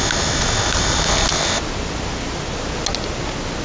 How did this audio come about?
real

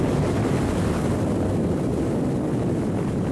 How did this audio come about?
real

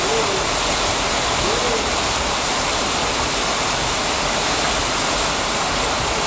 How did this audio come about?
real